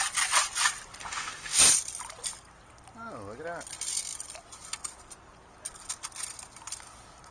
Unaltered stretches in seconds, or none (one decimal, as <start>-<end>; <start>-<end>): 0.0-1.0; 1.6-7.3

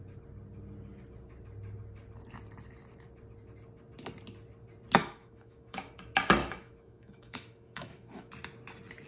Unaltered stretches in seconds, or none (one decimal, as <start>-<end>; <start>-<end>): 0.0-5.0; 5.9-6.4; 8.3-9.1

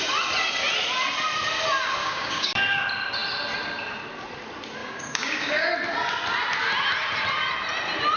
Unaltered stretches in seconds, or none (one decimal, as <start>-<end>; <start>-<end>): 0.0-2.0; 2.8-4.8; 5.7-8.2

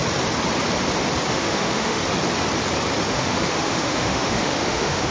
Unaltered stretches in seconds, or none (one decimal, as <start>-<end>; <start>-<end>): 0.0-1.3; 2.0-3.1

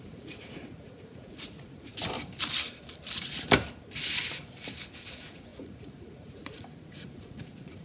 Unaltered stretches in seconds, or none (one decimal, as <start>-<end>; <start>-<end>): 1.9-5.1

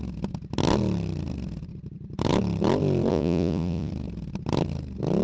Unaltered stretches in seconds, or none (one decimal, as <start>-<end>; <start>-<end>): 0.0-3.1; 3.9-5.2

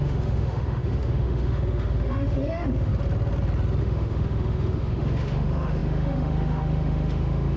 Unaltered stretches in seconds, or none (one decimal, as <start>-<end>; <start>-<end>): 2.9-3.8

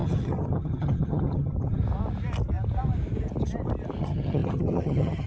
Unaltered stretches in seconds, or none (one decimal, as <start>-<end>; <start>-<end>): 1.8-4.0